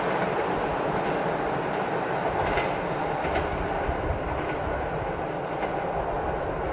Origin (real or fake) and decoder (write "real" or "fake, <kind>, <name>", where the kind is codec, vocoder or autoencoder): real